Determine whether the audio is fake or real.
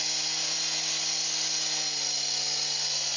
real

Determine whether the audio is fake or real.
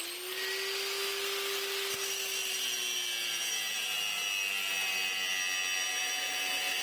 real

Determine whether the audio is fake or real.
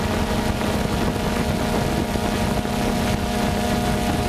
real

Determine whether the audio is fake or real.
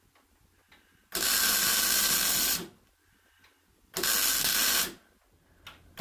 real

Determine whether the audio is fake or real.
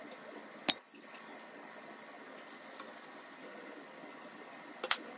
real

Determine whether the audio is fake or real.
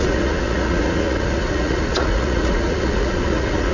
fake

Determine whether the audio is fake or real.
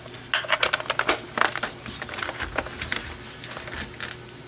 real